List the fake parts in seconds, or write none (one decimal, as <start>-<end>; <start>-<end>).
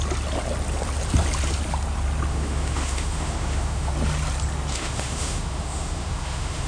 2.3-3.9; 4.7-6.7